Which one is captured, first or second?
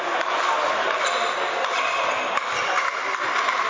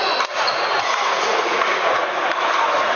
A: first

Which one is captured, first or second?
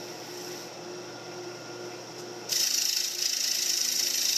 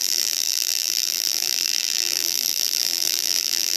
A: first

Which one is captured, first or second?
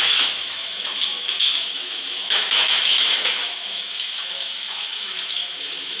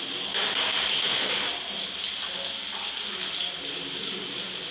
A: second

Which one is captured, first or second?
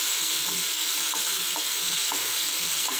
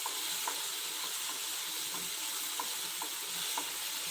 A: second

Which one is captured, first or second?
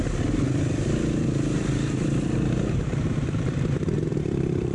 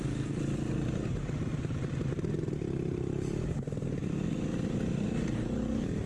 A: second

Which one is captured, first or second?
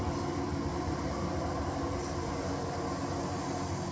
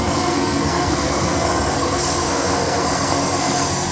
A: first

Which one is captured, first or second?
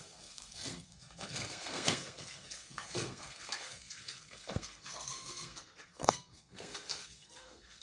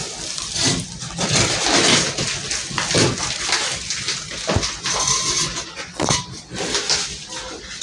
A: second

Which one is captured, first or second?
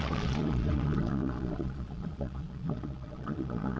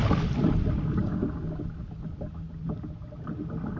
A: second